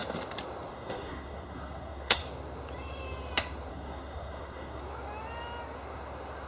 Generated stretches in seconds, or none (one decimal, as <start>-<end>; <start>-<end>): 0.7-2.2; 3.7-4.8